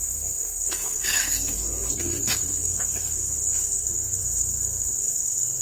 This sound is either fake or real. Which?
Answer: fake